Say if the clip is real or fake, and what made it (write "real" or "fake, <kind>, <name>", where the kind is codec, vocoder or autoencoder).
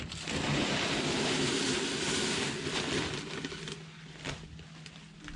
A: real